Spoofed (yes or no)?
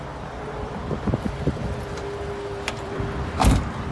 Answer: yes